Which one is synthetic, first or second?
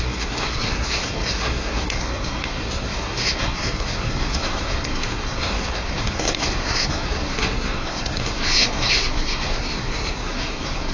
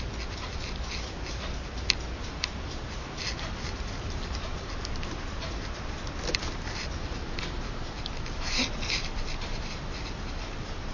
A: first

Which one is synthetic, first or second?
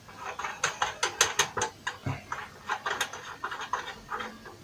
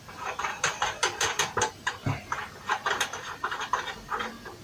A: second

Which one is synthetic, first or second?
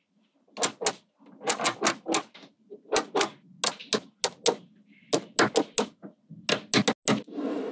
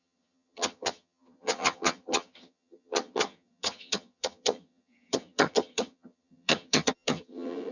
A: second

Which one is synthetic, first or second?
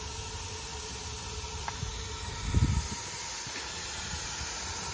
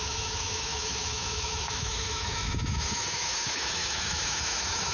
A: second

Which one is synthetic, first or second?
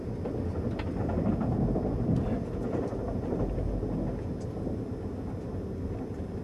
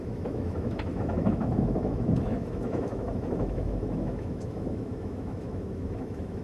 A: second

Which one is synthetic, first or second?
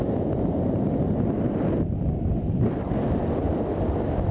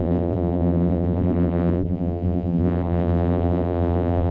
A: second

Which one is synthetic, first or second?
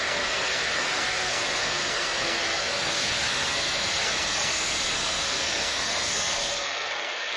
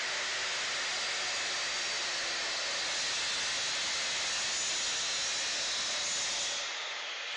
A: first